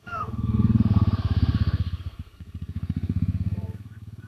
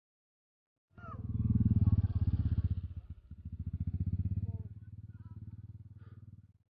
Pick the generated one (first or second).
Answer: first